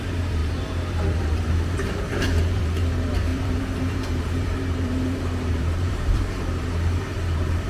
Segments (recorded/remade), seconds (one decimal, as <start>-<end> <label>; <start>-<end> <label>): 0.0-7.7 remade